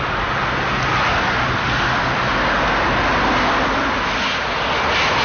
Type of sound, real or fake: real